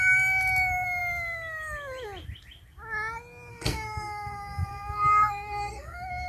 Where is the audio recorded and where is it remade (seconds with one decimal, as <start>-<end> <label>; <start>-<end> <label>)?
0.0-3.5 recorded; 3.5-6.3 remade